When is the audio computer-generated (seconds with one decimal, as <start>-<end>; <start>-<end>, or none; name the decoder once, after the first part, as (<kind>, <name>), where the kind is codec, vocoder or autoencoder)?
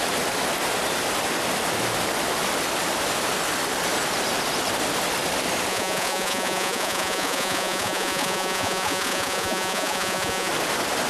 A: 5.7-10.5 (vocoder, Vocos)